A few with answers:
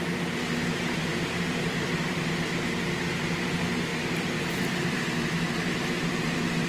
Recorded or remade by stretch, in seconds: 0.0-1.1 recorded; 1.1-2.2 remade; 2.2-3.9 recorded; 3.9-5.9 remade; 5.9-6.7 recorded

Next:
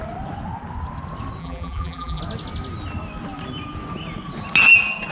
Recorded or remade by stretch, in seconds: 0.0-1.4 recorded; 1.4-2.2 remade; 2.2-5.1 recorded

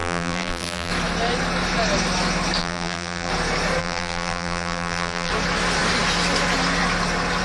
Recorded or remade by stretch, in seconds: 0.0-0.9 remade; 0.9-2.6 recorded; 2.6-3.3 remade; 3.3-3.8 recorded; 3.8-5.3 remade; 5.3-7.4 recorded

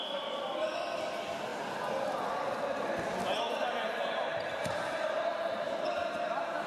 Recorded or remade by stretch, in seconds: 0.0-4.3 recorded; 4.3-6.1 remade; 6.1-6.7 recorded